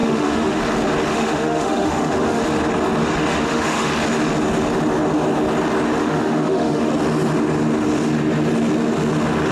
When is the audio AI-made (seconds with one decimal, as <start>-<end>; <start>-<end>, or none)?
0.0-0.6; 1.1-2.4; 3.3-3.9; 6.0-6.9